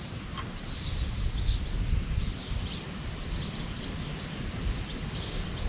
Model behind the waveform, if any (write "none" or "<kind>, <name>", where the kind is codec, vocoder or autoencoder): none